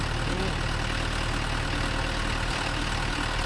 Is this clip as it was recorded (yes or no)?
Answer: yes